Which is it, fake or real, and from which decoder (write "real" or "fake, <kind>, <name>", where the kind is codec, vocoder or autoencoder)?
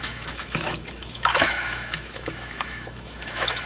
fake, autoencoder, DAC-VAE